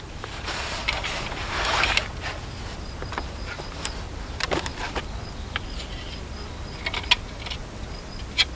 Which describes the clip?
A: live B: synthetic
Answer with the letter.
A